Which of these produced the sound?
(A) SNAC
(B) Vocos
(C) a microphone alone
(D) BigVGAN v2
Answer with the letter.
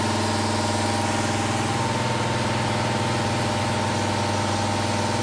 C